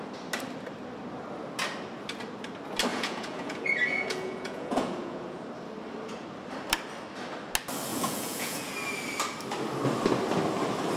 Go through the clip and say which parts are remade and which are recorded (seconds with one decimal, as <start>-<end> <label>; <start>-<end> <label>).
0.0-2.9 recorded; 2.9-5.4 remade; 5.4-7.9 recorded; 7.9-8.7 remade; 8.7-11.0 recorded

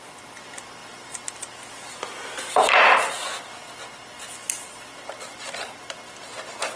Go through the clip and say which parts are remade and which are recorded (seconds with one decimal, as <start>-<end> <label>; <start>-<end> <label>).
0.0-6.8 recorded

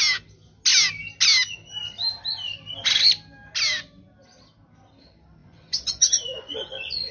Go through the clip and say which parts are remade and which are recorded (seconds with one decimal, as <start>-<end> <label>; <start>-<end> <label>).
0.0-5.4 recorded; 5.4-7.1 remade

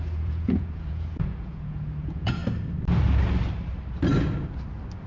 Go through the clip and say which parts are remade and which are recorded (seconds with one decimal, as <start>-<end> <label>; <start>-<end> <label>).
0.0-2.4 remade; 2.4-5.1 recorded

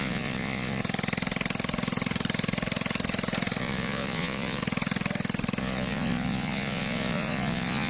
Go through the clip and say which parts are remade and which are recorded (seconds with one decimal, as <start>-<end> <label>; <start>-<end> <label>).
0.0-0.8 remade; 0.8-3.6 recorded; 3.6-4.6 remade; 4.6-5.6 recorded; 5.6-7.9 remade

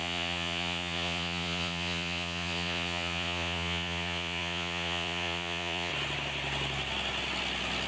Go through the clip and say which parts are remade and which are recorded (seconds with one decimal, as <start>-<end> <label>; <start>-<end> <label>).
0.0-5.9 remade; 5.9-7.9 recorded

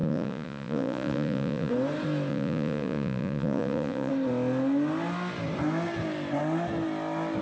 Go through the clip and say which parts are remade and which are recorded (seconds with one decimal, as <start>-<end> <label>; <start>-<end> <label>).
0.0-1.7 remade; 1.7-2.3 recorded; 2.3-4.1 remade; 4.1-7.4 recorded

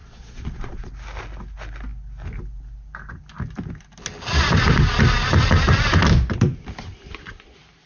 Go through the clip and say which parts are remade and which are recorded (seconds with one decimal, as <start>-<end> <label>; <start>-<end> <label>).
0.0-0.9 remade; 0.9-7.9 recorded